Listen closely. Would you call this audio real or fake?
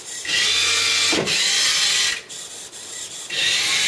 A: real